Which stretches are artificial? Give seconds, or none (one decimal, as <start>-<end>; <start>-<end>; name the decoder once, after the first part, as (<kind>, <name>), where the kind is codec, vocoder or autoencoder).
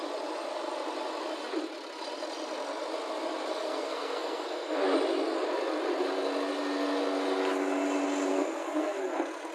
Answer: 3.5-4.8 (codec, SNAC); 8.3-9.5